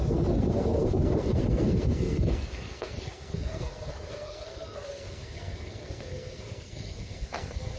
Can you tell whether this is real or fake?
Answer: fake